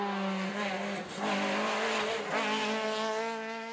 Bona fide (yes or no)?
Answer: yes